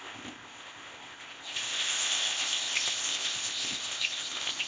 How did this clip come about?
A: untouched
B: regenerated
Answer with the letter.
B